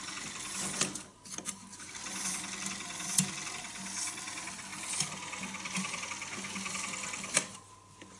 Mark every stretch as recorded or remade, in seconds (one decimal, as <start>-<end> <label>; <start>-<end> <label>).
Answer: 0.0-8.2 recorded